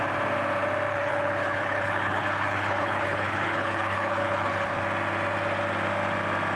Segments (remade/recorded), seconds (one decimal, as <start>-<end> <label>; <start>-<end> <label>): 0.0-0.9 recorded; 0.9-4.8 remade; 4.8-6.6 recorded